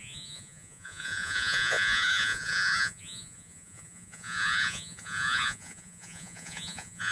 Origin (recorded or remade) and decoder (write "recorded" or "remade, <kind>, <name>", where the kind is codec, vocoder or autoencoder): remade, vocoder, Vocos